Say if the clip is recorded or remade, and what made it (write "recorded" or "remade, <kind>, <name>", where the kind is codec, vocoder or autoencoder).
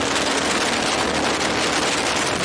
recorded